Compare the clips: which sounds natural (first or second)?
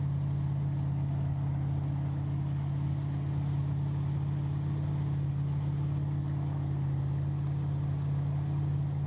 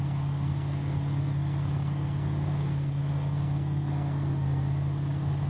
first